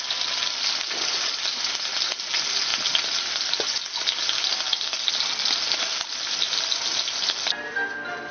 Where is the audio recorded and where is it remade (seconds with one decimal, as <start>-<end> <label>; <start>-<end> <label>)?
0.0-8.3 recorded